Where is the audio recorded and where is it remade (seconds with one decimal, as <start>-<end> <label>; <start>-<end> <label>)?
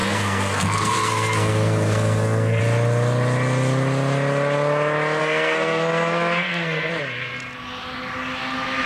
0.0-2.6 remade; 2.6-5.2 recorded; 5.2-7.0 remade; 7.0-8.9 recorded